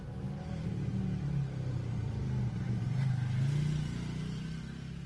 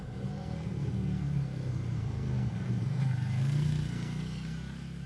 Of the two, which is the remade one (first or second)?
second